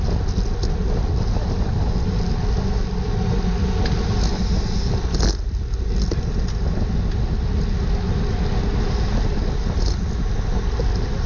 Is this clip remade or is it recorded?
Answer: recorded